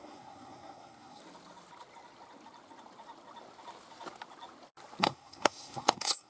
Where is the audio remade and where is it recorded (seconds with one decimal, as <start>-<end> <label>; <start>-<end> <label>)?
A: 0.0-1.2 remade; 1.2-5.0 recorded; 5.0-6.3 remade